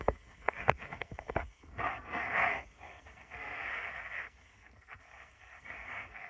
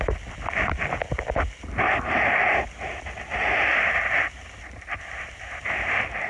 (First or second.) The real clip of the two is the second